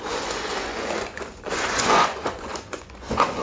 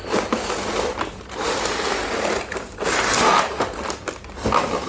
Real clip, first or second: second